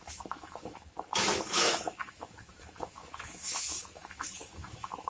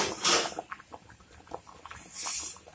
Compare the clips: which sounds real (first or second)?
second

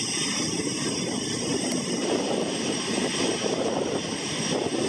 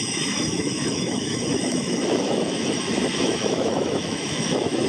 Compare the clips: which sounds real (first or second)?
first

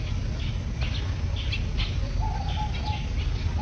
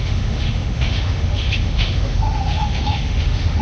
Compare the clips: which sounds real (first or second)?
first